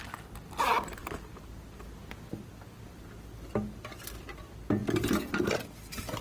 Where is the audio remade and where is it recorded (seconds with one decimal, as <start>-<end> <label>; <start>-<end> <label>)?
0.0-6.2 recorded